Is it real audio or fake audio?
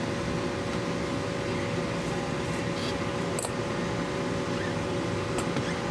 real